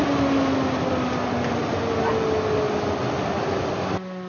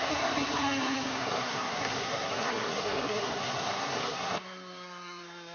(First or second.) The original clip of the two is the first